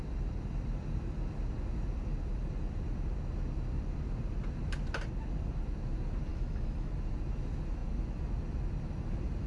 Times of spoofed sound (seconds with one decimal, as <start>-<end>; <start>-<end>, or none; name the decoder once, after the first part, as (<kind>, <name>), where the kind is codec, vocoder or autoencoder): 6.3-6.9 (autoencoder, DAC-VAE)